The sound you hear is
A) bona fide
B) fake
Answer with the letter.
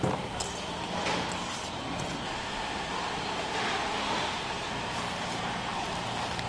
A